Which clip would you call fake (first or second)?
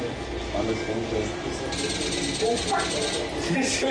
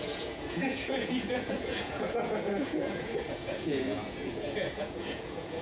second